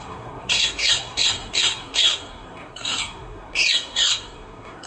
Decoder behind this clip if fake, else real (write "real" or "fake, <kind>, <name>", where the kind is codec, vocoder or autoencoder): fake, codec, SNAC